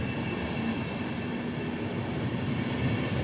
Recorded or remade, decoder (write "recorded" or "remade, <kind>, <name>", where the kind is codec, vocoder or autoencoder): recorded